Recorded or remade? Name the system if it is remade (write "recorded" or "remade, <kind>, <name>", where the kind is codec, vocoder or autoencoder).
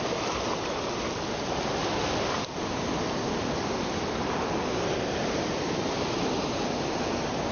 recorded